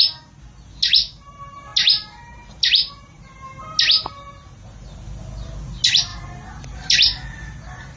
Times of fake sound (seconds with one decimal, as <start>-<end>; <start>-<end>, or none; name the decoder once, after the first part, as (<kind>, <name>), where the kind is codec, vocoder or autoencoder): none